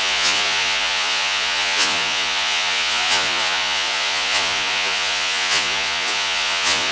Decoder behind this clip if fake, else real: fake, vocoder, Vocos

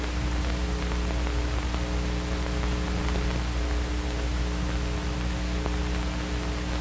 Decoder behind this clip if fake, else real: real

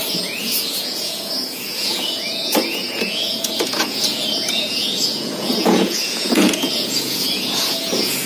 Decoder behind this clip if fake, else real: fake, vocoder, Vocos